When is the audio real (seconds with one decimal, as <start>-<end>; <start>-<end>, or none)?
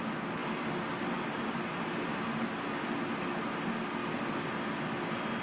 0.0-5.4